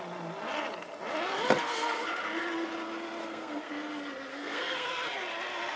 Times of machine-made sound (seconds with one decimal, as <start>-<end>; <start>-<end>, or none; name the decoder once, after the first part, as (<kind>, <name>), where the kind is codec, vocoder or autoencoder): 1.6-2.1 (codec, SNAC); 3.2-3.7; 4.3-4.9